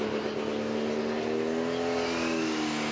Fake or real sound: real